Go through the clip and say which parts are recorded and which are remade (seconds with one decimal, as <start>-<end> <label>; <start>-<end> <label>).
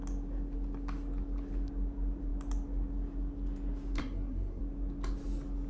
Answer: 0.0-4.0 recorded; 4.0-4.6 remade; 4.6-5.7 recorded